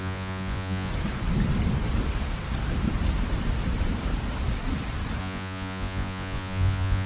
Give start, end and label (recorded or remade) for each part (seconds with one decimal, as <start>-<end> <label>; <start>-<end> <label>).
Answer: 0.0-0.9 remade; 0.9-5.2 recorded; 5.2-7.1 remade